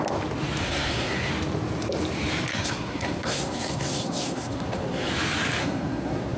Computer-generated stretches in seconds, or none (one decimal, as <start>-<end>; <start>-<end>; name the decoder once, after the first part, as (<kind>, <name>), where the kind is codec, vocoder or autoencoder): 0.6-1.3 (codec, SNAC); 2.5-5.1; 5.6-6.4